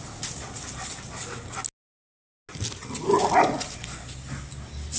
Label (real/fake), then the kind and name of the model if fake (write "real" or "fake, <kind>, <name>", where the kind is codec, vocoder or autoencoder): real